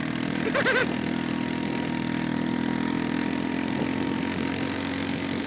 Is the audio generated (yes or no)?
no